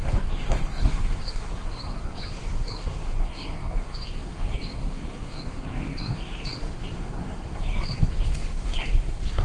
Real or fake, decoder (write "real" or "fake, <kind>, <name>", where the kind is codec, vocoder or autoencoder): fake, codec, SNAC